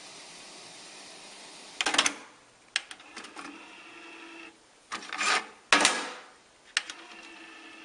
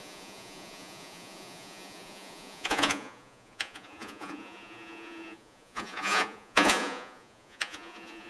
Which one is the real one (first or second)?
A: first